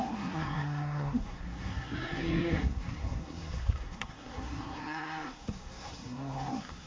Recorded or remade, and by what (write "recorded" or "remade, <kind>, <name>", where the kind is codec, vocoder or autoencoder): remade, codec, SNAC